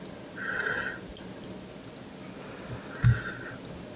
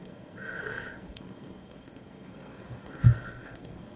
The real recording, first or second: first